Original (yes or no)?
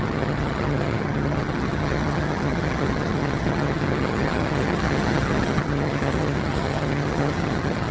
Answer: no